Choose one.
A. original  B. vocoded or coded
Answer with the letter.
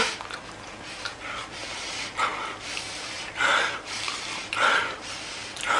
A